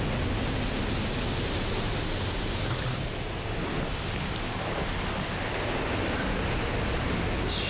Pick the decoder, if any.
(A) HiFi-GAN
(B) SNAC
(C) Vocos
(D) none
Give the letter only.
D